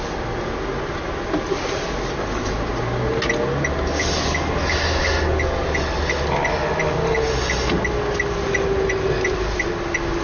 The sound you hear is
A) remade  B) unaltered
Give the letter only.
B